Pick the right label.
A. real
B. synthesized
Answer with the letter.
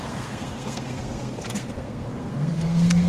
B